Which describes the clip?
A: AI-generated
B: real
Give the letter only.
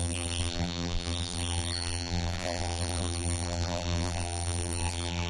A